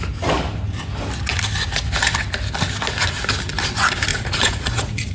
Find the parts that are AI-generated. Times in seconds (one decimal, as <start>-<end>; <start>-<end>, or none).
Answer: 4.1-5.1